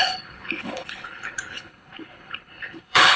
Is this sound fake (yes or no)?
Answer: yes